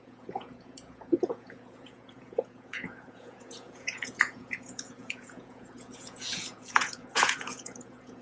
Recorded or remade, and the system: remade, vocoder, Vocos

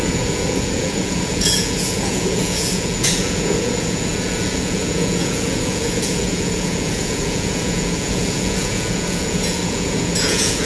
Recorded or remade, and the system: remade, vocoder, Vocos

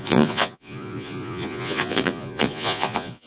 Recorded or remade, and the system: remade, vocoder, Vocos